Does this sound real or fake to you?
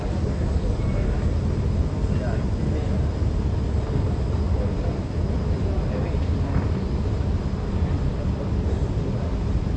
real